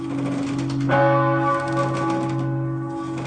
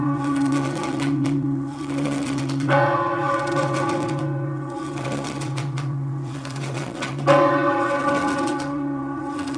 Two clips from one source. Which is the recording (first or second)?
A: first